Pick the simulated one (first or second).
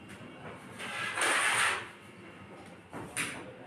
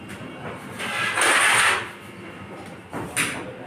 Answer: first